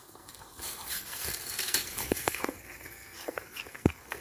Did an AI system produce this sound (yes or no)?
yes